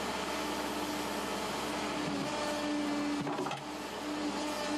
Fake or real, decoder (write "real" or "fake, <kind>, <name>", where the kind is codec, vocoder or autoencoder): real